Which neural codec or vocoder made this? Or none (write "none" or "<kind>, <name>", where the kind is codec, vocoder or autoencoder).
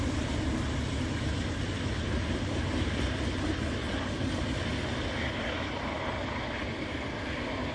none